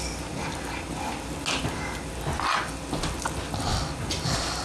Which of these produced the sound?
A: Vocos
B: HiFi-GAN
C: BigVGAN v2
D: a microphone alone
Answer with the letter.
D